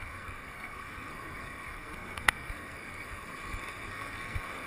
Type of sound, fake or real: fake